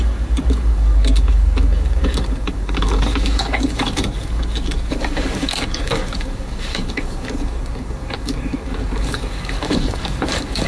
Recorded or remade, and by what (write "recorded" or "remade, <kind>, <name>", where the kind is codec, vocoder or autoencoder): remade, codec, DAC